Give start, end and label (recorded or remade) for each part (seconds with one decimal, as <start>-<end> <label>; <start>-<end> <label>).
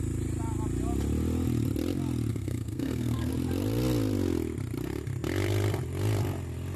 0.0-2.3 recorded; 2.3-3.3 remade; 3.3-6.8 recorded